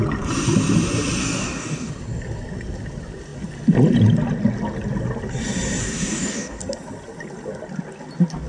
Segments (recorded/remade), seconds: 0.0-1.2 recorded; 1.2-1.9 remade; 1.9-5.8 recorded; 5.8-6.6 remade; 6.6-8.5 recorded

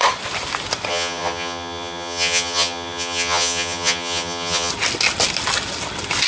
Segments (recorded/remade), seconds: 0.0-0.9 recorded; 0.9-4.7 remade; 4.7-6.3 recorded

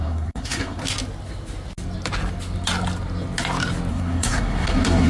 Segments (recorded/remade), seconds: 0.0-0.8 remade; 0.8-3.9 recorded; 3.9-5.1 remade

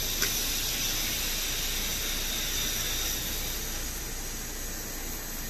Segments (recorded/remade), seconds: 0.0-5.5 recorded